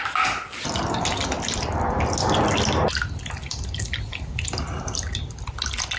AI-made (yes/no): no